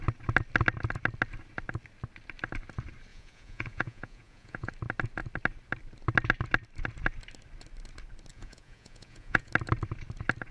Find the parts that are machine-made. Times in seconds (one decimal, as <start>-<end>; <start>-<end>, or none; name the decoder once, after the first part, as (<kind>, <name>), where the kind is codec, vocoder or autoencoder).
3.1-4.7 (vocoder, Vocos); 8.3-9.5

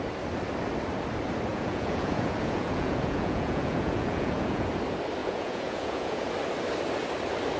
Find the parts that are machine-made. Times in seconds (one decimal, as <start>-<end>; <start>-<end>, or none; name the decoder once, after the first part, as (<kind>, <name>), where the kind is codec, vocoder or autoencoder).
1.5-4.7 (vocoder, Vocos); 5.2-6.2

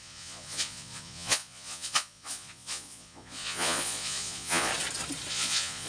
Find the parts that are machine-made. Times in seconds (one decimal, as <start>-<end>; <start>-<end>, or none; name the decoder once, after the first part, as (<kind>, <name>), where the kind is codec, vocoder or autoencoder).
0.0-4.7 (vocoder, Vocos); 5.3-5.9

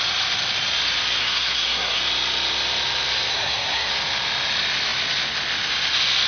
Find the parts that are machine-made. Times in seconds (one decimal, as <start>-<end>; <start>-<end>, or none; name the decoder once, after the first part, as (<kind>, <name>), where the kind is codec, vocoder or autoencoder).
1.2-2.0 (codec, SNAC); 3.3-3.9